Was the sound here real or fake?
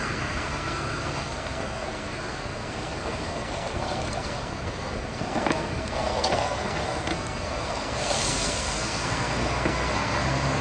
fake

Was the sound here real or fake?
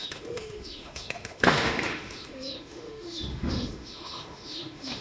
fake